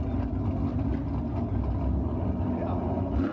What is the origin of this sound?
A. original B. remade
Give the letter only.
A